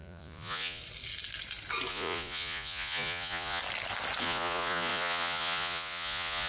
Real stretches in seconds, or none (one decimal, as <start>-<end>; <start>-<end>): 0.8-1.9; 3.6-4.2